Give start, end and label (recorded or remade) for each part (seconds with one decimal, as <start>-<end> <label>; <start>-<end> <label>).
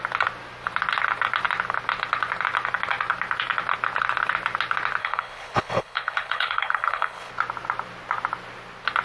0.0-5.0 recorded; 5.0-7.3 remade; 7.3-9.0 recorded